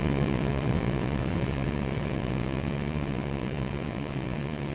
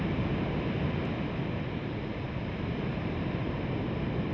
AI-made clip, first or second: first